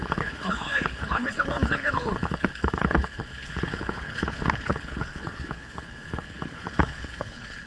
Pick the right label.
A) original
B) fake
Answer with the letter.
B